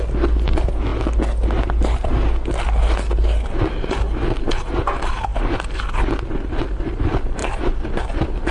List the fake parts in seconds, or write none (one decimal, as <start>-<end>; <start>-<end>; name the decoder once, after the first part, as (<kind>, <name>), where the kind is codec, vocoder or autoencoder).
7.4-8.5 (vocoder, BigVGAN v2)